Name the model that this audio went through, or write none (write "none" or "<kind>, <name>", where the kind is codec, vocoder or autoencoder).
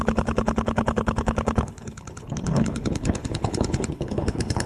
codec, HILCodec